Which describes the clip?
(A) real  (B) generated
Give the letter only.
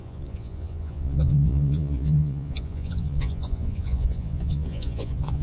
B